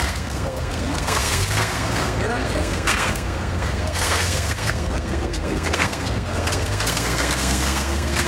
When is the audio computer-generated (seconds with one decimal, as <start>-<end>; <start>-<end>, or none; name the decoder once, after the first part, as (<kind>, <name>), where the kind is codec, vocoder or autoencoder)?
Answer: 0.0-8.3 (codec, SNAC)